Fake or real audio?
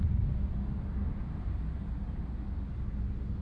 real